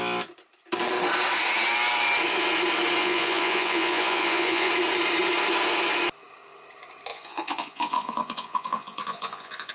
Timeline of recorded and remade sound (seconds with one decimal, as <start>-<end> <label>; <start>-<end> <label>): 0.0-3.0 recorded; 3.0-4.7 remade; 4.7-7.1 recorded; 7.1-9.7 remade